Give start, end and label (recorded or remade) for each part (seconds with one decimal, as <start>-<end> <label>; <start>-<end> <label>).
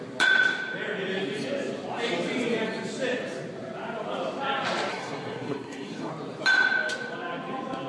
0.0-4.9 recorded; 4.9-6.1 remade; 6.1-7.9 recorded